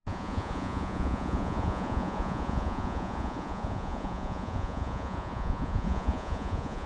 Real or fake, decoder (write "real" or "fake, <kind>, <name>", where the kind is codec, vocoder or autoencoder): fake, vocoder, Vocos